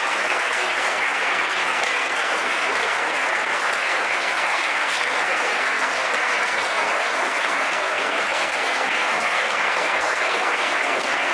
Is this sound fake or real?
fake